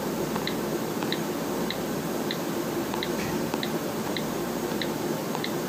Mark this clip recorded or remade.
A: remade